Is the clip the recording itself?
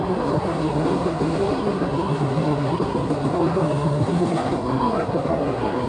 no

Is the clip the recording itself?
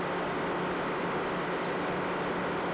yes